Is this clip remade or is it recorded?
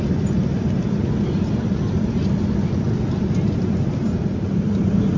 recorded